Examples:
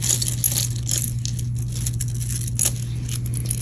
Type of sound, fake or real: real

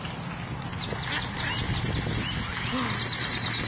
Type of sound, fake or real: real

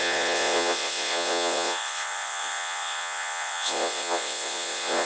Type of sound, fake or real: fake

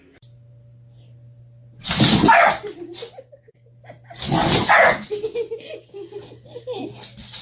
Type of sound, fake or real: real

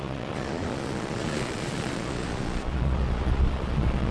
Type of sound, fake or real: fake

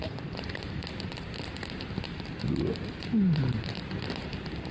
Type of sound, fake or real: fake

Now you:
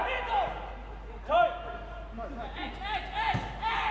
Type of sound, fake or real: real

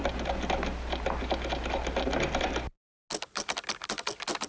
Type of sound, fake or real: real